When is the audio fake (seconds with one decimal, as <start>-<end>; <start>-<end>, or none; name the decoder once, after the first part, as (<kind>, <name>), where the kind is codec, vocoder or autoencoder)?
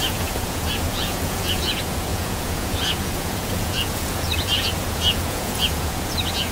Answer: 0.0-6.5 (vocoder, Vocos)